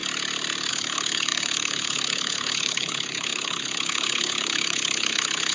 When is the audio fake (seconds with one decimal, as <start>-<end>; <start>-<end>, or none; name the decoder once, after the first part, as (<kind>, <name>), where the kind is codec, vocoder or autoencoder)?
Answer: 0.7-5.5 (codec, HILCodec)